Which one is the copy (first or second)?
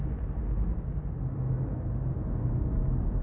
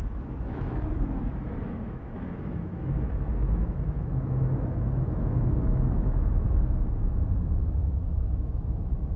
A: second